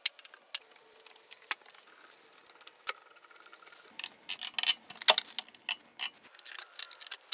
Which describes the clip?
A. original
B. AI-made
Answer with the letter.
A